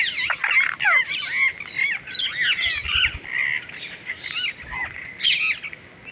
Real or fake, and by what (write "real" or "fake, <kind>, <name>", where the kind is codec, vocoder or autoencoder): real